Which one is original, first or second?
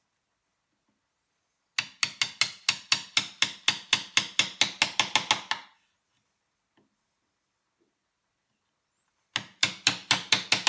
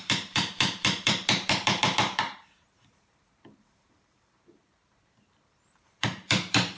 first